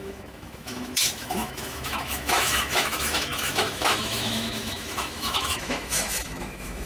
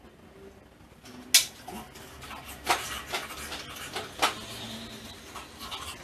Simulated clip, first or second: first